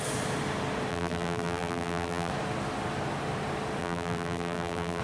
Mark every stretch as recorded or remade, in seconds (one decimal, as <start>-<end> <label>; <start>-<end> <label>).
0.0-0.9 recorded; 0.9-2.3 remade; 2.3-3.8 recorded; 3.8-5.0 remade